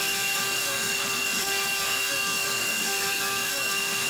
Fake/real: fake